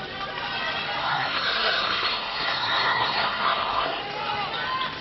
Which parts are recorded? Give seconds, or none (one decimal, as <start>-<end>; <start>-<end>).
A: 0.0-1.0; 4.0-5.0